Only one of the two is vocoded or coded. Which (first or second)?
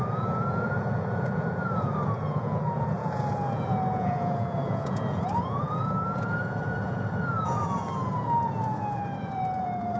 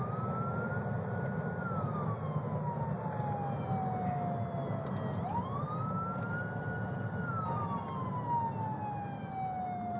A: first